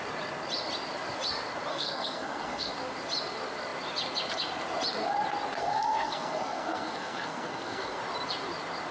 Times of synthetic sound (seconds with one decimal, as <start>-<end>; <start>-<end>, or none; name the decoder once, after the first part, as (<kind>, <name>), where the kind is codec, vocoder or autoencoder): 1.7-2.7 (codec, SNAC); 5.6-8.0

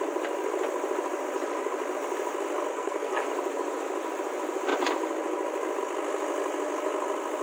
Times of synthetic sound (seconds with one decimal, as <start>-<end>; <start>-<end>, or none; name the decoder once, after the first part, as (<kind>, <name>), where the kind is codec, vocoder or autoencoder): 2.7-3.3 (codec, SNAC)

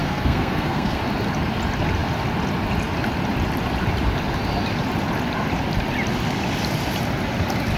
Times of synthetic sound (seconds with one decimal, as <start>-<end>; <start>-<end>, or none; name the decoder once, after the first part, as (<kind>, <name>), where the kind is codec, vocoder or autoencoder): 0.0-1.0 (codec, SNAC)